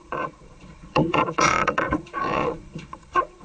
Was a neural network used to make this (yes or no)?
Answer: yes